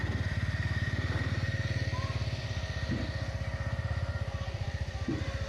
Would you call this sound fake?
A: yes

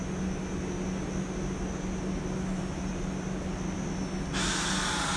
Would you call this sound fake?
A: no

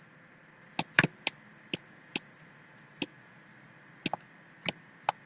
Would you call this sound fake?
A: no